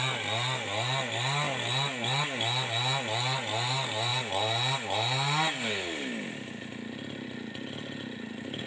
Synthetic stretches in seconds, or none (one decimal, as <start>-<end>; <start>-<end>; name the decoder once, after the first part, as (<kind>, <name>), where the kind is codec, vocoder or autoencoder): none